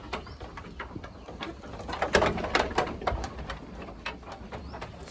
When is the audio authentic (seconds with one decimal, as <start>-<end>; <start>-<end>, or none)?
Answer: 0.0-5.1

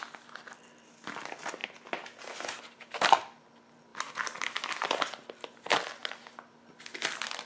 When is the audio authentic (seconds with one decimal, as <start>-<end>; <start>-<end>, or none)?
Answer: 0.0-7.5

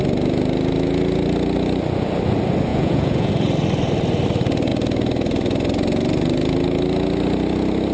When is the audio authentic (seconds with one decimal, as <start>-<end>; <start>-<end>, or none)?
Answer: 0.0-2.7; 3.3-7.9

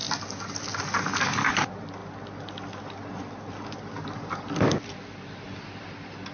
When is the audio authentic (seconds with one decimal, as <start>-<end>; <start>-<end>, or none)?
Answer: 0.0-6.3

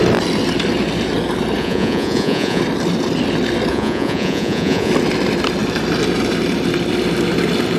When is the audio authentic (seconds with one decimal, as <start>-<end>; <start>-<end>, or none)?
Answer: 0.0-1.6; 2.6-3.7; 4.9-7.8